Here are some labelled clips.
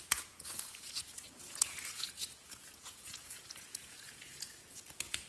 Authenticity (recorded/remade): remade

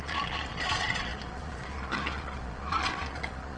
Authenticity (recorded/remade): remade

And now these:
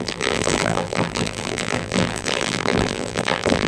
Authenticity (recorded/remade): remade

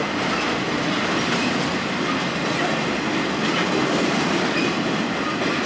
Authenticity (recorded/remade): recorded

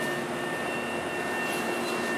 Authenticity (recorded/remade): recorded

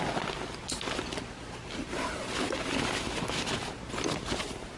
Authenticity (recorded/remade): recorded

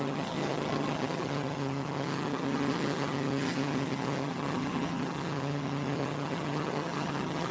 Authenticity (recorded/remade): remade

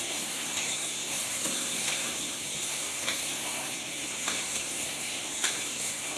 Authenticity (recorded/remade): remade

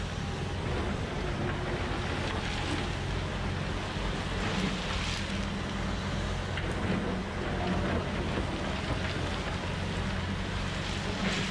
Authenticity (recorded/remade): recorded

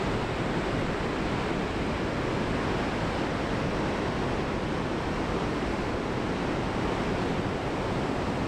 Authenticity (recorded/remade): recorded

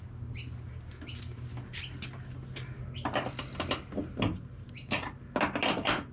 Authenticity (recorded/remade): recorded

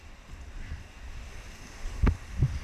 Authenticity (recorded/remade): recorded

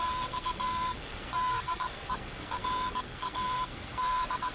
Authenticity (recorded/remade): remade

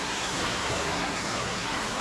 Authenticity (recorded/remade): remade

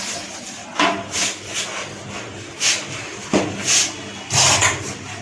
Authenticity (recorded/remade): recorded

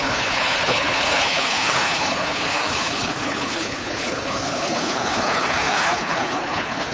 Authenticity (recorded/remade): remade